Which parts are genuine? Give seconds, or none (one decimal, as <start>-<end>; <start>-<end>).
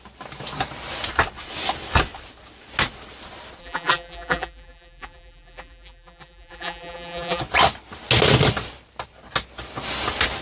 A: 0.0-3.6; 7.4-10.4